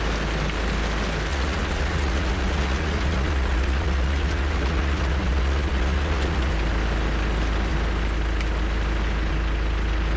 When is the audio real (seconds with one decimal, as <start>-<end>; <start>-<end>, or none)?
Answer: 0.0-1.3; 6.5-10.2